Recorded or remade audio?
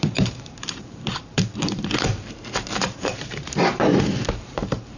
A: remade